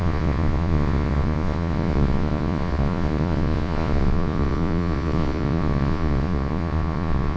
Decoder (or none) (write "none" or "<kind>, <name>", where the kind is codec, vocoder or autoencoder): vocoder, Vocos